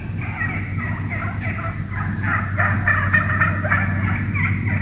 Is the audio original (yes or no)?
yes